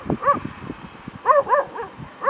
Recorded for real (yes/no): yes